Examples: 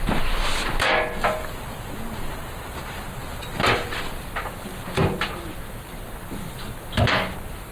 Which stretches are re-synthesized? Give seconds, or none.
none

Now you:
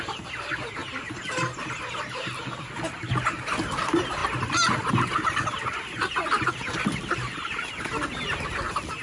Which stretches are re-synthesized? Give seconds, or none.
none

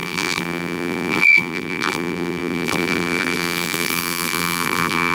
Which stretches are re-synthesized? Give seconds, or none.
0.0-5.1 (vocoder, BigVGAN v2)

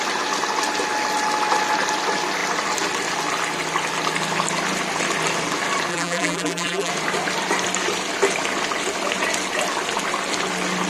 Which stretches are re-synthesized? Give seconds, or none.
5.9-6.9 (vocoder, BigVGAN v2)

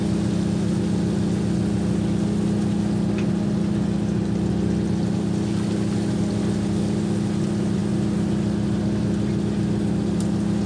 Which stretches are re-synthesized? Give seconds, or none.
none

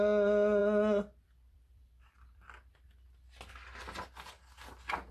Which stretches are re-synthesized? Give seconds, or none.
0.6-2.4 (vocoder, BigVGAN v2)

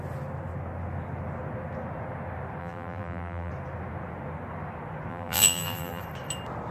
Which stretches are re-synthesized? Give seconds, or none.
2.6-3.5 (vocoder, BigVGAN v2); 5.1-6.0